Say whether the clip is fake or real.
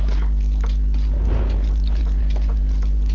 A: real